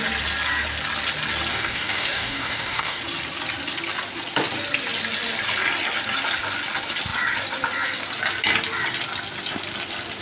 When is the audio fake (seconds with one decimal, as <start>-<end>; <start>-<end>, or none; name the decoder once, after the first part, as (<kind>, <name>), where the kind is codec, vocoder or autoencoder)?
1.5-3.0 (codec, DAC)